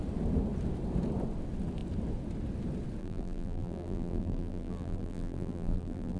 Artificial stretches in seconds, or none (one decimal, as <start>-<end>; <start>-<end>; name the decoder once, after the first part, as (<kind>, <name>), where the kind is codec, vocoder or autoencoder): 3.0-6.2 (vocoder, BigVGAN v2)